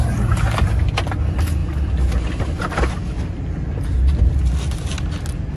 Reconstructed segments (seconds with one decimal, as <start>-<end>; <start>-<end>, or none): none